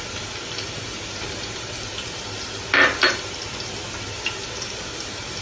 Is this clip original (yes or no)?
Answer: yes